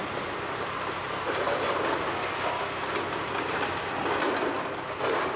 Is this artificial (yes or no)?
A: no